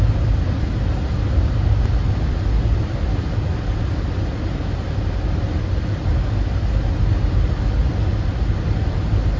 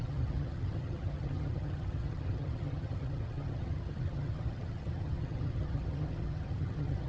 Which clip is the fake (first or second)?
second